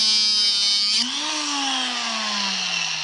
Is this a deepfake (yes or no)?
no